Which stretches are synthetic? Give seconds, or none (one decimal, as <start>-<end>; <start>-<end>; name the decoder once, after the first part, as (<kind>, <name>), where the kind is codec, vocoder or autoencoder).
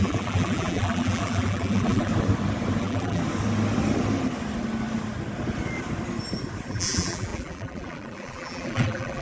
0.0-2.1 (vocoder, BigVGAN v2); 2.8-3.2; 6.7-9.2